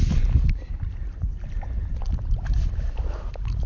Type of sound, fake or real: real